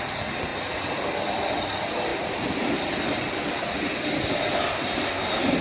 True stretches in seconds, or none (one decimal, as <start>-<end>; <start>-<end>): 0.0-5.6